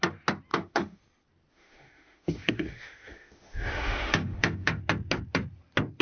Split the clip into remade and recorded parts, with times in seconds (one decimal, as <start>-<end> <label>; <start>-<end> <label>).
0.0-0.5 recorded; 0.5-1.0 remade; 1.0-1.5 recorded; 1.5-4.8 remade; 4.8-6.0 recorded